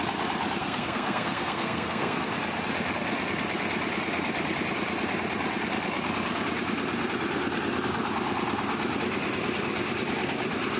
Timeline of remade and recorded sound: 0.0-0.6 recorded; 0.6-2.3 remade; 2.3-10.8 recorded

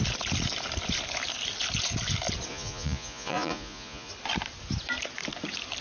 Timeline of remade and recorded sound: 0.0-2.5 recorded; 2.5-4.1 remade; 4.1-5.8 recorded